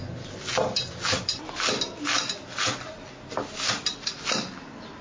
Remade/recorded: recorded